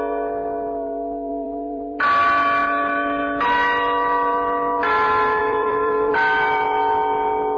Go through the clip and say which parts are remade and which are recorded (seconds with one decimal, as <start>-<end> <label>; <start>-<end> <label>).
0.0-1.3 recorded; 1.3-2.0 remade; 2.0-5.4 recorded; 5.4-6.1 remade; 6.1-7.6 recorded